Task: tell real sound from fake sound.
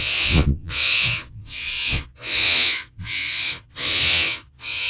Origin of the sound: fake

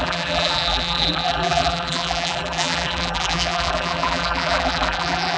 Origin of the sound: fake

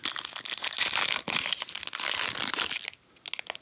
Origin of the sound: real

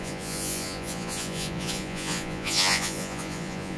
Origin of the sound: fake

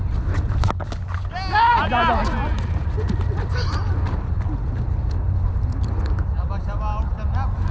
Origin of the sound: real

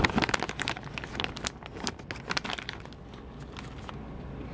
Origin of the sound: real